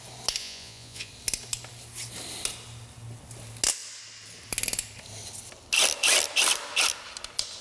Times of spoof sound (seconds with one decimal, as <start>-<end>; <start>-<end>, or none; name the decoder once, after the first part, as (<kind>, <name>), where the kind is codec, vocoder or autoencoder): 0.4-1.1 (vocoder, Vocos)